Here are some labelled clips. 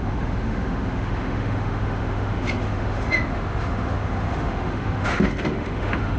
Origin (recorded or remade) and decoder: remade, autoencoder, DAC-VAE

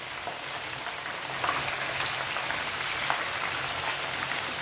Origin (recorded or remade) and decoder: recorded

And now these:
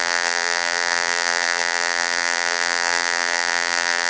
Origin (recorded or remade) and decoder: remade, vocoder, BigVGAN v2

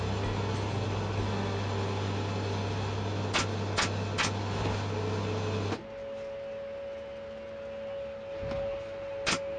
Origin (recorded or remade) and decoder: recorded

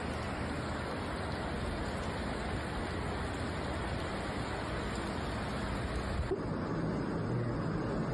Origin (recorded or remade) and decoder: recorded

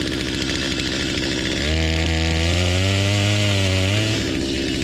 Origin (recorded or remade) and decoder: recorded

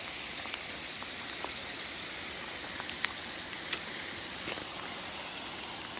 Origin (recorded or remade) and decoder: recorded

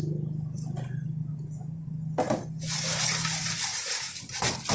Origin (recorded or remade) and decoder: recorded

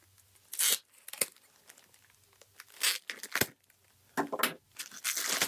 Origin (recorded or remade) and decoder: recorded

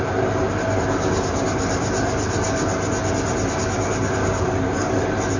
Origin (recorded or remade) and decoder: recorded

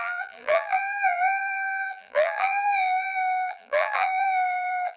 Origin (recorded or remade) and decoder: remade, vocoder, BigVGAN v2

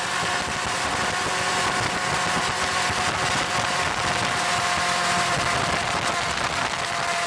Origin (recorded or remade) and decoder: recorded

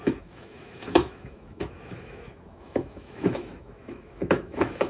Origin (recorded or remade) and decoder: remade, autoencoder, DAC-VAE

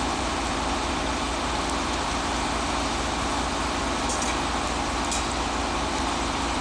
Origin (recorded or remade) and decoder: recorded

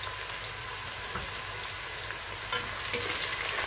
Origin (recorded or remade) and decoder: recorded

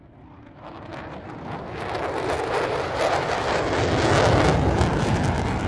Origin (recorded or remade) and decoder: recorded